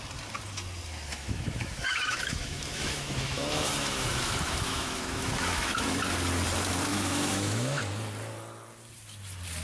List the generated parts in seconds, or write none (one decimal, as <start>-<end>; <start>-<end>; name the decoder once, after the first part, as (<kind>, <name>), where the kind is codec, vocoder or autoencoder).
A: 1.1-6.0 (autoencoder, DAC-VAE); 6.9-7.8